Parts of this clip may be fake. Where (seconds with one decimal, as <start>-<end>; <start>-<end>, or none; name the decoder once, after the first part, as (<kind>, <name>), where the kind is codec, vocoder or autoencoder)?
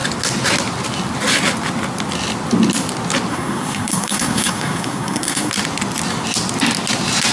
3.3-5.5 (codec, SNAC)